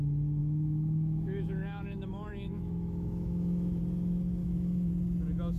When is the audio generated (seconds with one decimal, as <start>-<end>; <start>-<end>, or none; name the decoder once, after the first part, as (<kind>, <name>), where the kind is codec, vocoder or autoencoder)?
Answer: 0.4-3.8 (autoencoder, DAC-VAE); 4.4-4.9